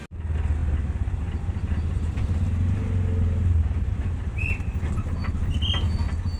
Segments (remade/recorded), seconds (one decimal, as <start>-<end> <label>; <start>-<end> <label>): 0.0-6.4 recorded